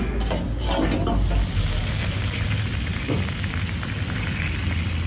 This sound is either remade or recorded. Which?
recorded